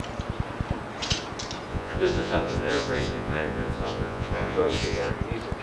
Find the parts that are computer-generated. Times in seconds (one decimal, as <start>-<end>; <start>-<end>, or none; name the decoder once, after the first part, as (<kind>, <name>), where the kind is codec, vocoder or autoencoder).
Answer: 1.7-5.1 (vocoder, Vocos)